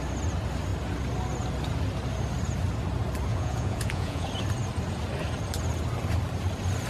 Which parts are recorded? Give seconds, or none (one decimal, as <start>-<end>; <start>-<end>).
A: 0.0-3.3; 4.3-6.9